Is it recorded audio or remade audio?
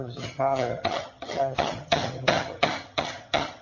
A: remade